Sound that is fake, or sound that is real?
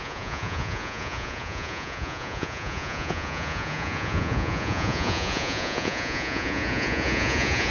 fake